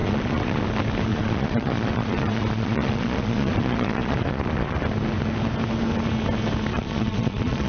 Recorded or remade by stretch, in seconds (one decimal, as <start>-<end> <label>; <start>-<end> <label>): 0.0-0.6 remade; 0.6-1.1 recorded; 1.1-4.8 remade; 4.8-6.7 recorded; 6.7-7.7 remade